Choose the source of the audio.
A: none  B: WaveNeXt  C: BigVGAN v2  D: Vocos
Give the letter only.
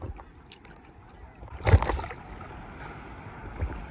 A